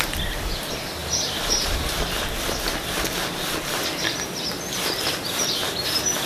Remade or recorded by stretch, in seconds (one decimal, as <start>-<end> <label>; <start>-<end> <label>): 0.0-1.0 recorded; 1.0-1.9 remade; 1.9-6.3 recorded